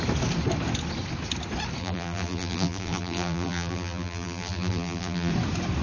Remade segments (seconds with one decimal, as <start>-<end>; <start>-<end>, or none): 1.8-5.3